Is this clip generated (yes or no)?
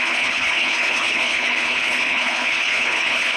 yes